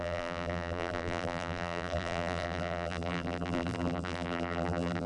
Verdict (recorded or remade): remade